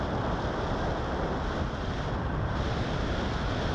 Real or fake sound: real